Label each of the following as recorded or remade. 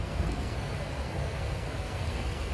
remade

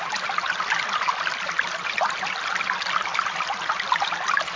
recorded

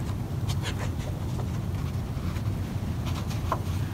recorded